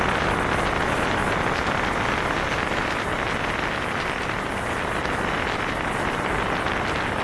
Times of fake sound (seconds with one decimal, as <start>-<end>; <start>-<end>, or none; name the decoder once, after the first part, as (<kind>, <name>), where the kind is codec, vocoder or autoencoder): 1.2-2.1 (vocoder, BigVGAN v2)